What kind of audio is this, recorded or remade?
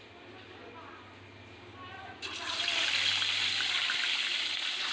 recorded